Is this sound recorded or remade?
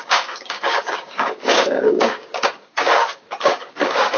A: remade